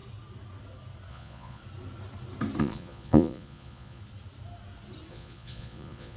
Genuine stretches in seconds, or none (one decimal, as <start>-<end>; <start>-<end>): 0.0-1.1; 1.6-2.6; 4.0-5.1